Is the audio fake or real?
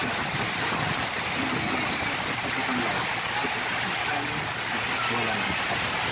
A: real